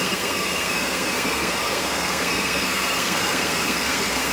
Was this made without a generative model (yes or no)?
no